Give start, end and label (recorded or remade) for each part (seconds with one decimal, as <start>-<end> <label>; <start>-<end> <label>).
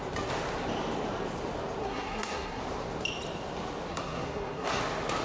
0.0-1.8 recorded; 1.8-2.6 remade; 2.6-3.9 recorded; 3.9-4.8 remade; 4.8-5.2 recorded